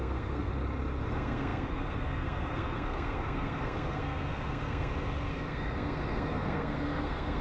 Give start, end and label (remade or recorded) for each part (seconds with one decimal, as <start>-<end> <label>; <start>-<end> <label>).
0.0-0.5 remade; 0.5-1.1 recorded; 1.1-7.4 remade